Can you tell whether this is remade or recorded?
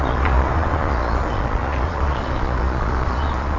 remade